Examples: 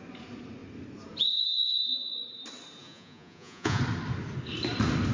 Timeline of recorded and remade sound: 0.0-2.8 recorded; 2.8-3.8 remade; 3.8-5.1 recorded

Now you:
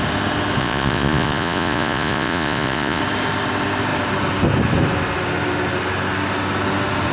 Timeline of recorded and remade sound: 0.0-0.6 recorded; 0.6-3.0 remade; 3.0-7.1 recorded

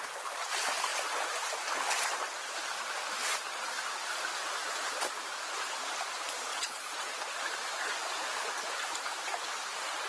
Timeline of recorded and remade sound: 0.0-6.5 recorded; 6.5-7.1 remade; 7.1-10.1 recorded

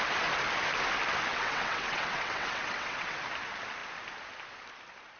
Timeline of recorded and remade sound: 0.0-1.3 recorded; 1.3-3.2 remade; 3.2-5.2 recorded